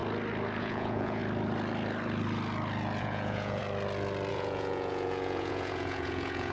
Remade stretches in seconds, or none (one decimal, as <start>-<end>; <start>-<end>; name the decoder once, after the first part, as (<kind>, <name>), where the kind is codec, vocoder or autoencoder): 0.6-1.2 (vocoder, Vocos); 3.0-3.6; 4.3-6.5